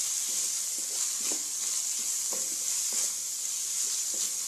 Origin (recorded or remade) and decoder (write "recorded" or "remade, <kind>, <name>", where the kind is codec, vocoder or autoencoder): recorded